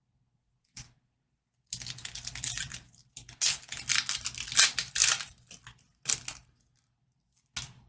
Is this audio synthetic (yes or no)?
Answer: no